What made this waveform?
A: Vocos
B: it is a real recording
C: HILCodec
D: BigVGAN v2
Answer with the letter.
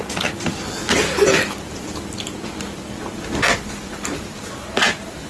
B